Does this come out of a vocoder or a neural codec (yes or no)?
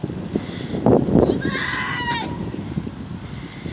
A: no